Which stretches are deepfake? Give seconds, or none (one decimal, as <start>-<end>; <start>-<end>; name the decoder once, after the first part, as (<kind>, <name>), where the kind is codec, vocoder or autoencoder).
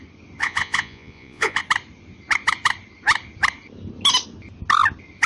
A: 0.4-1.6 (vocoder, Vocos)